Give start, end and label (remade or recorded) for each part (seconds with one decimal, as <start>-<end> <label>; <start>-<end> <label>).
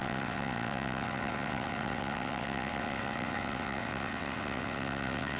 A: 0.0-5.4 remade